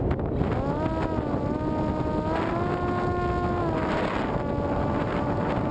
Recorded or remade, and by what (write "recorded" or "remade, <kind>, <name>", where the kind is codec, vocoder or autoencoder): recorded